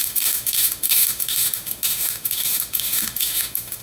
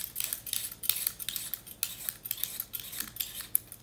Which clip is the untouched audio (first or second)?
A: second